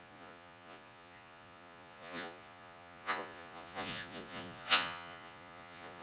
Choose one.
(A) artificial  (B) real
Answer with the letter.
A